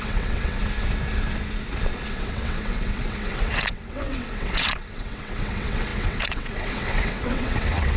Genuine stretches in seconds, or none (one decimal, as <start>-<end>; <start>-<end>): 0.6-2.1